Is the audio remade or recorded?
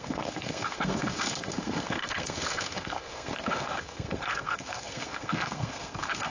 remade